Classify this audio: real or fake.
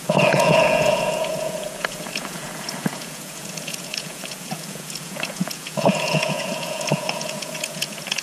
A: fake